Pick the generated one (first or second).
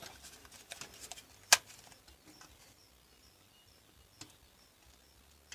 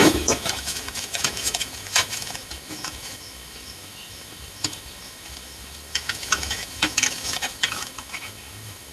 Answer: second